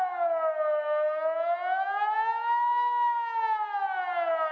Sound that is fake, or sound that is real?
real